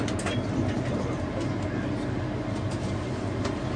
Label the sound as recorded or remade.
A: recorded